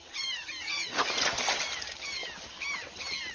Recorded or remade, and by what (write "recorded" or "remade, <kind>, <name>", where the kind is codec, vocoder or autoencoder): recorded